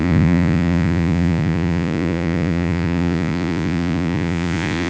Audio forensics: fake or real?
fake